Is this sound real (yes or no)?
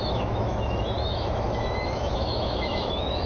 no